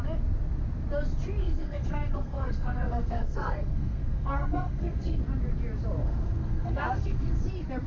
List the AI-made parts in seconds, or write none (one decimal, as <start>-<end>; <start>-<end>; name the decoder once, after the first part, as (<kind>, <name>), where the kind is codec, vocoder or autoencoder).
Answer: 1.4-5.2 (codec, SNAC); 6.0-7.4